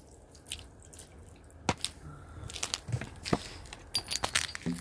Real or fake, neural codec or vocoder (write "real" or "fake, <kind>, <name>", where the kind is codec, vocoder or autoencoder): real